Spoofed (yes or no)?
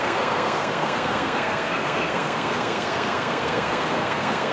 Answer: yes